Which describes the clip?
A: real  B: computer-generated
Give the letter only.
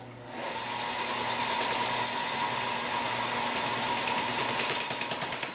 A